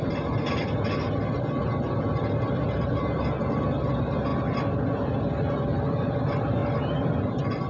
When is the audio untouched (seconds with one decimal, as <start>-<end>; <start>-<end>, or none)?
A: 0.0-7.7